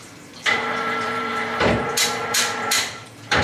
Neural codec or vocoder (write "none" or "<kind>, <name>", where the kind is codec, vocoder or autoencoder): vocoder, BigVGAN v2